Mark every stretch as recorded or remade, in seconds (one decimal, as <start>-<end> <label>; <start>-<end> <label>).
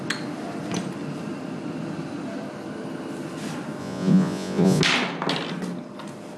0.0-3.8 recorded; 3.8-4.8 remade; 4.8-6.4 recorded